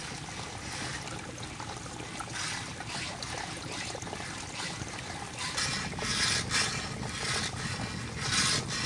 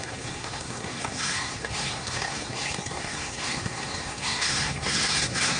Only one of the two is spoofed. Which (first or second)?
second